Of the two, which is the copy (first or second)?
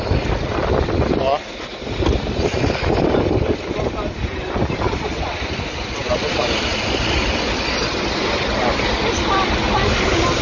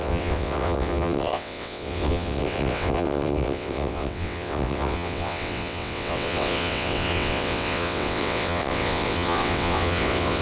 second